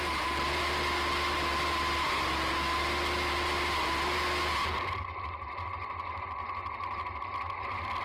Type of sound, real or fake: real